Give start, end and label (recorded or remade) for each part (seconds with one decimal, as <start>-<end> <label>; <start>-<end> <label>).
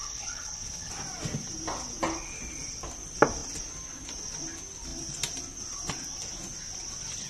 0.0-0.9 remade; 0.9-7.3 recorded